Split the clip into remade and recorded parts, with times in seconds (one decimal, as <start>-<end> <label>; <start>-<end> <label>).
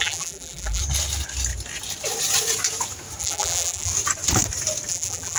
0.0-0.8 remade; 0.8-3.2 recorded; 3.2-3.9 remade; 3.9-4.9 recorded; 4.9-5.4 remade